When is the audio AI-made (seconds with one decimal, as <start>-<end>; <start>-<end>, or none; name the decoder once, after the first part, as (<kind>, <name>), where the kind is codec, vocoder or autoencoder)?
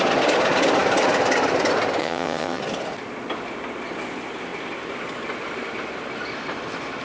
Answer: 2.0-2.6 (vocoder, HiFi-GAN)